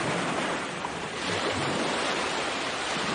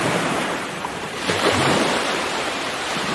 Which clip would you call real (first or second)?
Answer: first